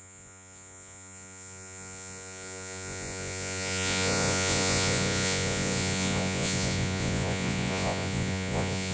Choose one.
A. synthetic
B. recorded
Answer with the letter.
A